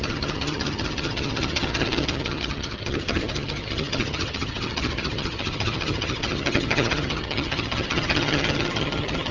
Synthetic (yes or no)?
yes